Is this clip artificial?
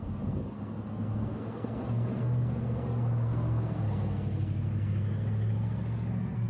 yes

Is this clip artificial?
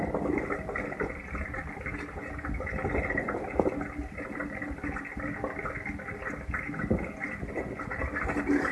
no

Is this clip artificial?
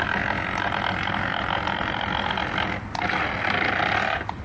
no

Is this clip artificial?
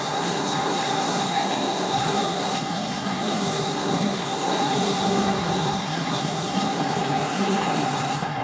yes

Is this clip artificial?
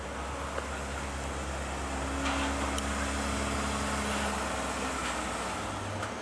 no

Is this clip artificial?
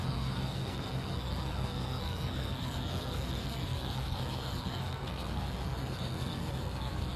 yes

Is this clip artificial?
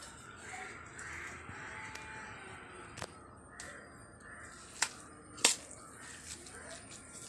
no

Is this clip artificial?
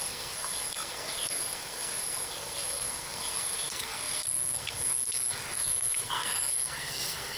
yes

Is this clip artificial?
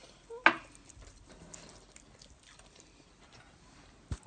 no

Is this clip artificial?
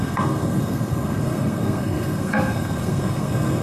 yes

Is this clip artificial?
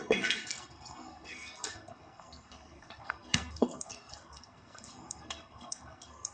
yes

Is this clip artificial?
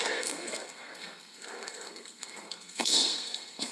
yes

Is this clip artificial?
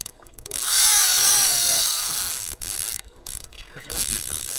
yes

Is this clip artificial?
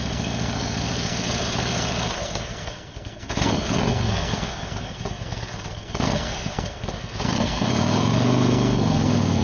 yes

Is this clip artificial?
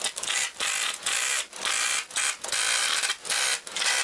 no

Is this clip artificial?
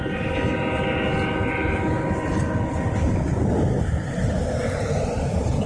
no